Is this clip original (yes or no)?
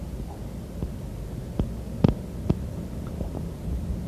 yes